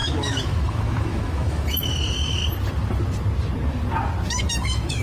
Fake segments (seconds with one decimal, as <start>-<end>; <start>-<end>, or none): 0.0-2.4; 4.3-5.0